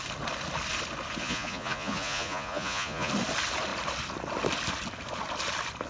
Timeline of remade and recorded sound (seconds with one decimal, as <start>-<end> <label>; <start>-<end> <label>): 0.0-1.2 recorded; 1.2-3.1 remade; 3.1-5.9 recorded